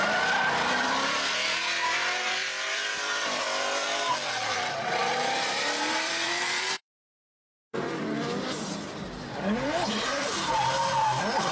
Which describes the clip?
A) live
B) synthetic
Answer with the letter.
B